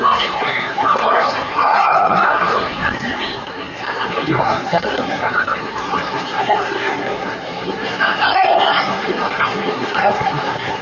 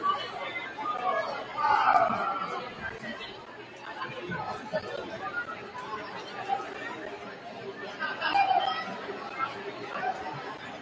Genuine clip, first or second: second